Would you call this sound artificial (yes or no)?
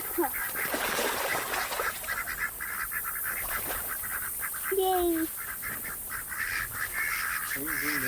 no